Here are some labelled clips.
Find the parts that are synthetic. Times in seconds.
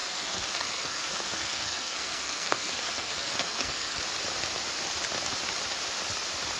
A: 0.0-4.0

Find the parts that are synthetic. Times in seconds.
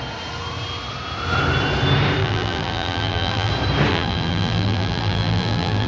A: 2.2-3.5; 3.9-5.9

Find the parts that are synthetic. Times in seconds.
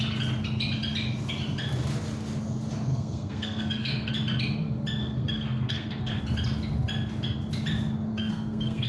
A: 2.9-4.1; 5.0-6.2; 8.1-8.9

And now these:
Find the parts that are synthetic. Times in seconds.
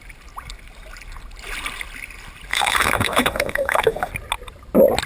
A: 2.5-4.1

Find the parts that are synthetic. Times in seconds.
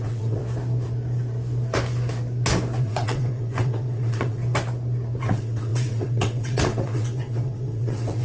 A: 0.0-0.4; 2.8-4.4; 5.2-8.2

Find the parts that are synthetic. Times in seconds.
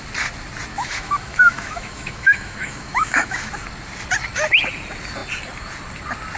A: 0.7-3.5